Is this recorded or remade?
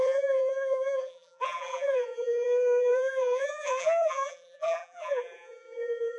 remade